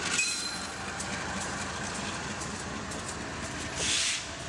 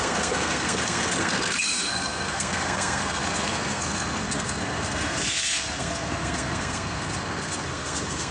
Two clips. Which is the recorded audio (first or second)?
first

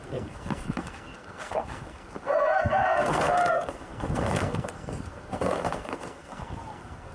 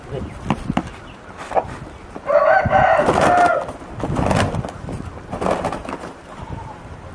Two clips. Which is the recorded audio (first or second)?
second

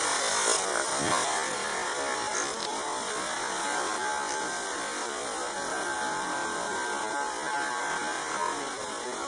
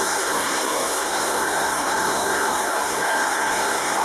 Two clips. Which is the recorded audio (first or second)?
first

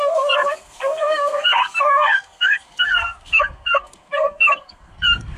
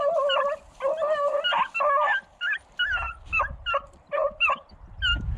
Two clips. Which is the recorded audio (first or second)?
second